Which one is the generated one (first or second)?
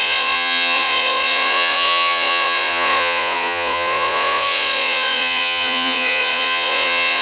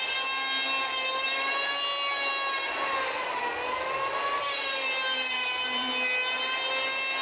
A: first